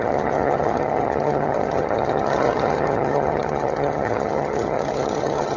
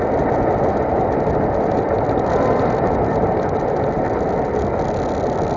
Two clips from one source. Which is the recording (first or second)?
second